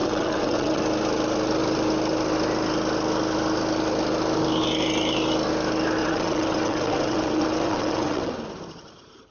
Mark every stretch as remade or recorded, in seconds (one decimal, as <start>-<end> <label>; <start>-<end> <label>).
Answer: 0.0-0.8 remade; 0.8-6.0 recorded; 6.0-8.3 remade; 8.3-9.3 recorded